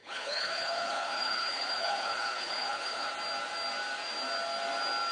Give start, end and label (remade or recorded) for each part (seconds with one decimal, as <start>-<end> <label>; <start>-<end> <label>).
0.0-3.1 remade; 3.1-5.1 recorded